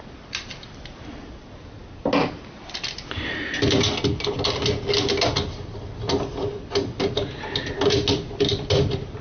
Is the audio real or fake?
real